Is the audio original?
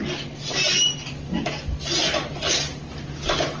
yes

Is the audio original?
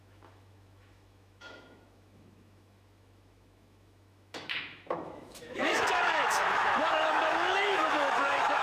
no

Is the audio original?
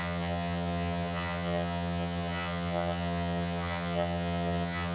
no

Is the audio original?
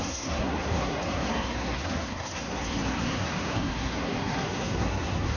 no